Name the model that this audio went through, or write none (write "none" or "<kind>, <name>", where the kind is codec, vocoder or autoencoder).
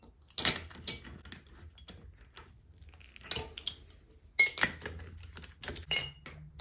none